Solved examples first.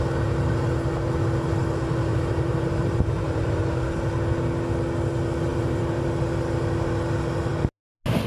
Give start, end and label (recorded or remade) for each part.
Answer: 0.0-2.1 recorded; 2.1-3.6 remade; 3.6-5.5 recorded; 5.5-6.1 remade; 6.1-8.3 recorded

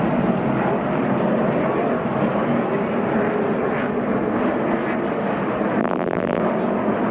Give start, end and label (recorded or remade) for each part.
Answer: 0.0-5.8 recorded; 5.8-6.4 remade; 6.4-7.1 recorded

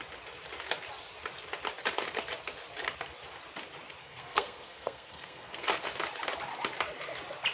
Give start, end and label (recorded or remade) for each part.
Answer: 0.0-4.0 recorded; 4.0-5.7 remade; 5.7-7.5 recorded